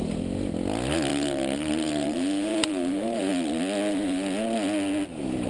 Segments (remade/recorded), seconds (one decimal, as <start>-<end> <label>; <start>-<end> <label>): 0.0-1.1 recorded; 1.1-3.3 remade; 3.3-5.5 recorded